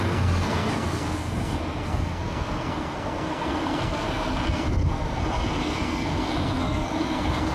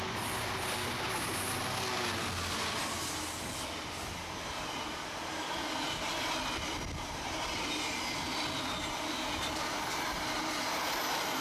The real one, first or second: second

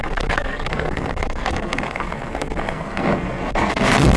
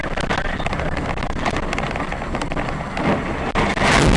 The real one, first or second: second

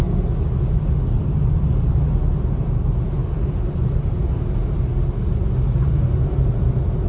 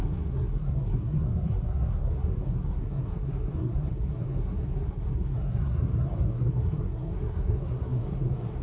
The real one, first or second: first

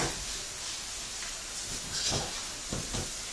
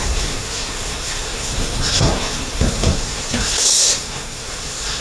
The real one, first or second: first